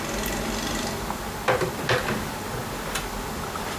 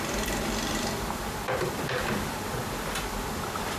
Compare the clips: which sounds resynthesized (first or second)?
second